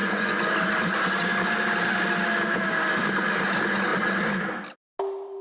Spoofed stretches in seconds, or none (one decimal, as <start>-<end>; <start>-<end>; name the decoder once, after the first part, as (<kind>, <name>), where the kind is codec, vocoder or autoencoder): 0.0-0.5 (vocoder, Vocos)